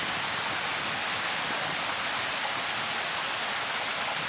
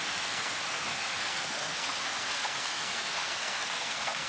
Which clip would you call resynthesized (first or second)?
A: second